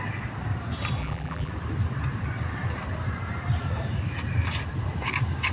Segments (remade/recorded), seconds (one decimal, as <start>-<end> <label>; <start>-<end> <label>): 0.0-1.0 recorded; 1.0-1.5 remade; 1.5-5.5 recorded